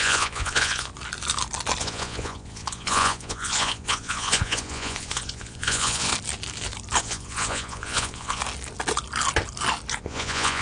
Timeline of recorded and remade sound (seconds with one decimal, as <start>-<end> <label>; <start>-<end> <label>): 0.0-0.9 remade; 0.9-1.8 recorded; 1.8-6.1 remade; 6.1-7.0 recorded; 7.0-8.4 remade; 8.4-10.0 recorded; 10.0-10.6 remade